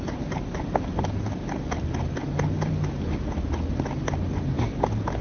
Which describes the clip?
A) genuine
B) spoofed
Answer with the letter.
A